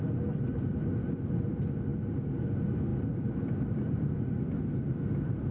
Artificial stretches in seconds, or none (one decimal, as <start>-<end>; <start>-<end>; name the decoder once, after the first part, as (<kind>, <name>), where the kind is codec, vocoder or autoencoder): none